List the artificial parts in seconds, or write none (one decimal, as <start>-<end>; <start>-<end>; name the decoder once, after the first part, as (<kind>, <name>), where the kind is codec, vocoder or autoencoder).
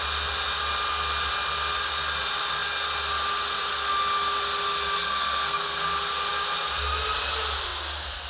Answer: 5.0-5.8 (codec, SNAC)